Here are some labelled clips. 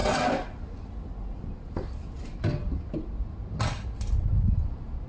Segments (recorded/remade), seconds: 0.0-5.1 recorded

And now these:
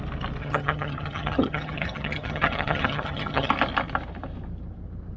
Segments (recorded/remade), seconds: 0.0-0.4 recorded; 0.4-3.5 remade; 3.5-5.2 recorded